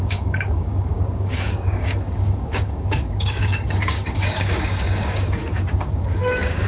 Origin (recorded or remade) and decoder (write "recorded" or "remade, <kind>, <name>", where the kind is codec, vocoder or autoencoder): remade, codec, DAC